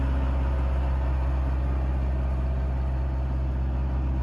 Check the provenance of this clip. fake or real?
real